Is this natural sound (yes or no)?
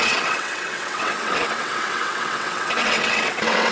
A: no